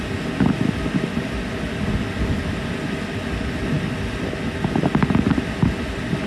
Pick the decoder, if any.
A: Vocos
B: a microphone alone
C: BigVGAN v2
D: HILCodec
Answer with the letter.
B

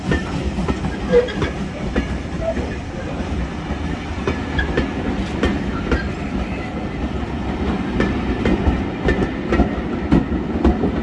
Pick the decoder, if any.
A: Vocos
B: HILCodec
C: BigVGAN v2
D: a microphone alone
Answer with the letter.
D